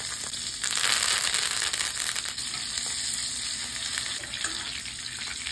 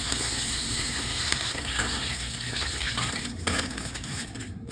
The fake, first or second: second